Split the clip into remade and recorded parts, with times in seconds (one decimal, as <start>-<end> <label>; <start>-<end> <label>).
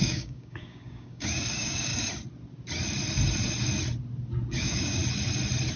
0.0-1.9 remade; 1.9-4.5 recorded; 4.5-5.0 remade; 5.0-5.8 recorded